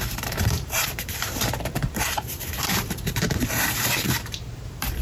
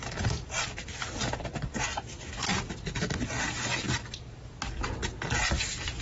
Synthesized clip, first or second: first